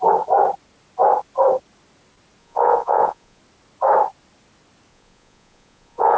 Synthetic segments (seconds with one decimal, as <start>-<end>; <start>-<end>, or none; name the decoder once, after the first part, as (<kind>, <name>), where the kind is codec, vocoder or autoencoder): 2.4-3.4 (vocoder, Vocos); 4.9-6.2

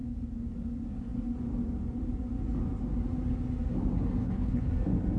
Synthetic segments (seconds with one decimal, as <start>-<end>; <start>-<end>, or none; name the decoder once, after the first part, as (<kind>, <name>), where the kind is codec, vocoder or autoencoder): 4.2-4.7 (codec, HILCodec)

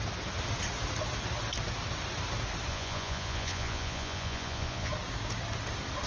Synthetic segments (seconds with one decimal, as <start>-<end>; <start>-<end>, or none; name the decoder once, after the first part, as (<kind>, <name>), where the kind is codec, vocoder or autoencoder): 2.7-4.9 (vocoder, Vocos)

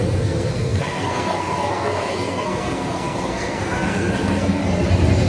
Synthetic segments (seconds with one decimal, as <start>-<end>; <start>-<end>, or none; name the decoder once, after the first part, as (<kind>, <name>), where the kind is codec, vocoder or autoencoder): 0.0-4.6 (codec, SNAC)

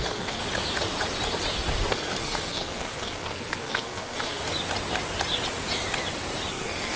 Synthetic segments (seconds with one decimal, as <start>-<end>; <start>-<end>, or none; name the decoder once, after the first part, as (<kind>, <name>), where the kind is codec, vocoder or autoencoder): 0.0-0.4 (codec, SNAC); 1.9-4.4; 6.5-7.0

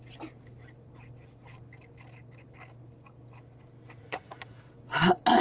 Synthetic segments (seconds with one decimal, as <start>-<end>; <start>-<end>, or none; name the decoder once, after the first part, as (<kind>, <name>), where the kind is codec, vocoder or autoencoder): 4.0-4.6 (vocoder, Vocos)